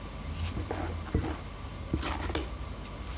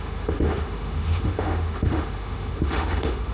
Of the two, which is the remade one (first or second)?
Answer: second